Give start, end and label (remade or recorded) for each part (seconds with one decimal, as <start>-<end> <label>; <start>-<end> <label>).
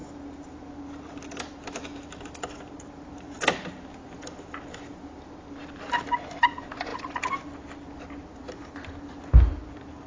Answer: 0.0-10.1 recorded